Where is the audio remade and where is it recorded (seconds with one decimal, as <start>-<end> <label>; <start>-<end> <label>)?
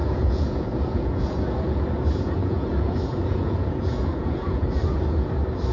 0.0-1.8 remade; 1.8-2.4 recorded; 2.4-5.3 remade; 5.3-5.7 recorded